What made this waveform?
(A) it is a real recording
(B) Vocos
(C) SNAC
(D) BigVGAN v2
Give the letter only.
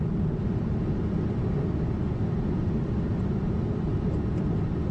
A